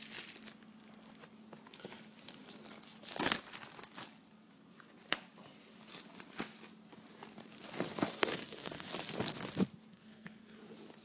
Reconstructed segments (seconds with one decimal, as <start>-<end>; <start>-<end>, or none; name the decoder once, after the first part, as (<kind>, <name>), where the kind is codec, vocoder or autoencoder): 8.3-8.9 (codec, SNAC); 9.9-10.6